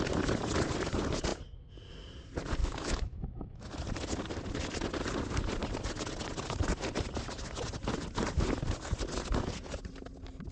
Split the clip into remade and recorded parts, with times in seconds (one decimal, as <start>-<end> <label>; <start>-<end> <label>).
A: 0.0-2.6 recorded; 2.6-3.7 remade; 3.7-10.5 recorded